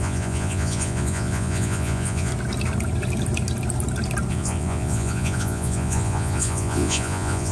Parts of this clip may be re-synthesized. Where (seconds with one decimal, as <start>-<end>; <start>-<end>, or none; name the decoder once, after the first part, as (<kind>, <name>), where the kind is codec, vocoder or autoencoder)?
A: 0.0-2.3 (vocoder, Vocos); 4.3-7.5